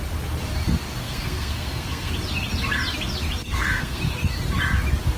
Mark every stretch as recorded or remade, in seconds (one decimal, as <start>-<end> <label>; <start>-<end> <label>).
0.0-1.0 recorded; 1.0-2.1 remade; 2.1-3.4 recorded; 3.4-4.0 remade; 4.0-5.2 recorded